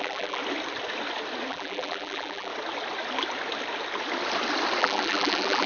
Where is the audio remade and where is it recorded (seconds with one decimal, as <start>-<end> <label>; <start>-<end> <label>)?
0.0-0.4 remade; 0.4-1.5 recorded; 1.5-2.5 remade; 2.5-4.8 recorded; 4.8-5.7 remade